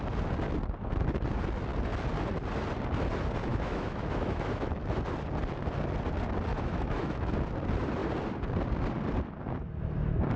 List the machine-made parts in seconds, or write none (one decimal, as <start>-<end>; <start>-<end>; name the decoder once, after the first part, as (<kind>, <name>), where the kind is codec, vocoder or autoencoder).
3.5-5.1 (autoencoder, DAC-VAE); 6.5-7.3

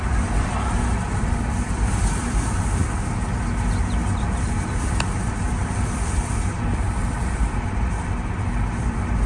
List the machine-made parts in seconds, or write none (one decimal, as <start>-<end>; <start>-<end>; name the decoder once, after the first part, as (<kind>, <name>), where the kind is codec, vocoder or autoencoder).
0.0-2.8 (vocoder, BigVGAN v2); 4.7-9.3

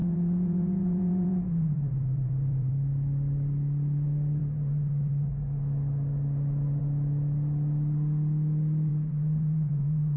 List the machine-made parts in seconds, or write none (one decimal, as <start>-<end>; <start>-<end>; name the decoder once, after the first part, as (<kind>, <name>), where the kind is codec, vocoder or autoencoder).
0.0-2.7 (vocoder, Vocos); 8.9-10.2

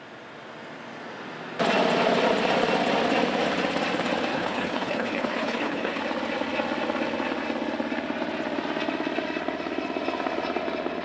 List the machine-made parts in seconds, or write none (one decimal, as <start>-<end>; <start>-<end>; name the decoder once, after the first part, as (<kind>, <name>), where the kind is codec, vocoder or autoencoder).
4.3-6.0 (codec, HILCodec)

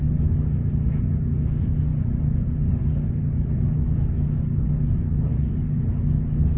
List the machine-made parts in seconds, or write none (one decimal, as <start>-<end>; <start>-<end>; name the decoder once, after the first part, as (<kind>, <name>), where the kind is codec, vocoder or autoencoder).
none

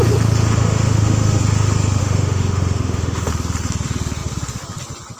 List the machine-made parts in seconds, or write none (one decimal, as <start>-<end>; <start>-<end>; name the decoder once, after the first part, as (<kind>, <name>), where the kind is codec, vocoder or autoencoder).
0.6-1.4 (autoencoder, DAC-VAE); 2.0-3.3

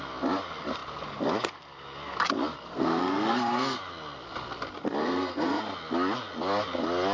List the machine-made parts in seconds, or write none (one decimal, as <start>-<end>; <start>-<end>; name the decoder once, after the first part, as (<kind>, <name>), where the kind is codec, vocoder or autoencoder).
2.7-3.8 (codec, SNAC); 5.0-5.6

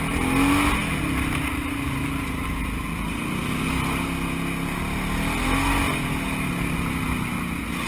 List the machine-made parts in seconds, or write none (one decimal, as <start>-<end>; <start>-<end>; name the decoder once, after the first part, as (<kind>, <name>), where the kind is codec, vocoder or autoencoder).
none